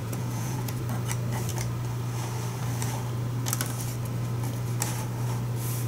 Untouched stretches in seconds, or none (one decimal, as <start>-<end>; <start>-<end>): 0.8-5.9

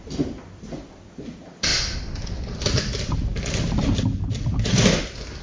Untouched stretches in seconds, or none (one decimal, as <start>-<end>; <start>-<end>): 1.7-2.8

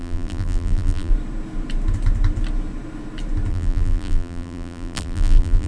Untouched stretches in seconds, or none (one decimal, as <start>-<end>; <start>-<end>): 1.1-3.5

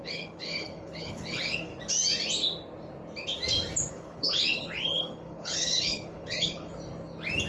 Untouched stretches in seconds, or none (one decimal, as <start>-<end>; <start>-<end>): 1.7-3.9; 6.7-7.5

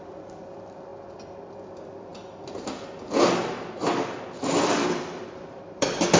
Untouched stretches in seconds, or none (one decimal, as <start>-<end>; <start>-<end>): 0.9-1.7; 2.1-4.4

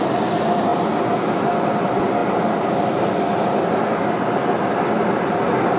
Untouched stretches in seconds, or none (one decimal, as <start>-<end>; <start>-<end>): 0.0-5.8

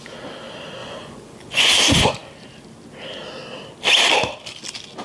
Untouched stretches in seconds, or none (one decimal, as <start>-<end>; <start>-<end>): 0.0-0.8; 1.7-5.0

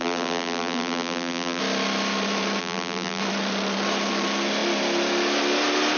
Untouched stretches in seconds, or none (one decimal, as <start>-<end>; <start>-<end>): 1.6-2.6; 3.2-6.0